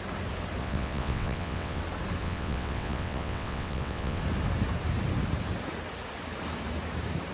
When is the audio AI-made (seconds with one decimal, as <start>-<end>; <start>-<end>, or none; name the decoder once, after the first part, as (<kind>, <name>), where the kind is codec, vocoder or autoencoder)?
0.6-1.8 (vocoder, WaveNeXt); 2.2-4.2